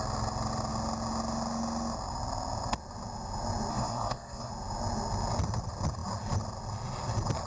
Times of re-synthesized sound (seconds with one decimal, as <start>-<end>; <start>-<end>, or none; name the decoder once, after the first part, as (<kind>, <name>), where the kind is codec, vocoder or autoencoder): 3.7-4.5 (codec, SNAC)